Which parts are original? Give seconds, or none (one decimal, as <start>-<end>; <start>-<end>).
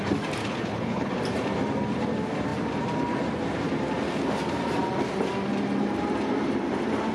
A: 0.0-0.4; 1.1-7.1